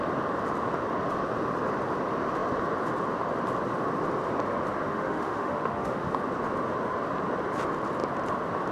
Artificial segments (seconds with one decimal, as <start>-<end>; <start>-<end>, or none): 4.9-6.1